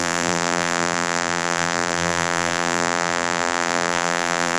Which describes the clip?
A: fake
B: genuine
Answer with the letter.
A